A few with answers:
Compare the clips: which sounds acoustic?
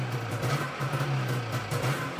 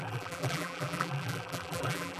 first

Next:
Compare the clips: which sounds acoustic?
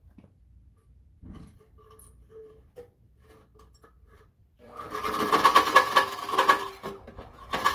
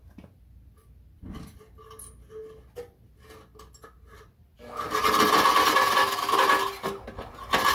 second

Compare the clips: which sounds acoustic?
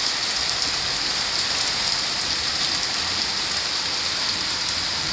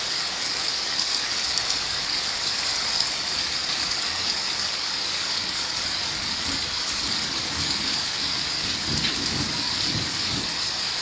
first